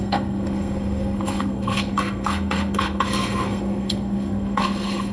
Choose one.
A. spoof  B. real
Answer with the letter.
A